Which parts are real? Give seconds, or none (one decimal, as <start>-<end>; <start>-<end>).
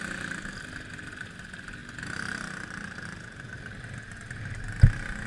0.0-5.3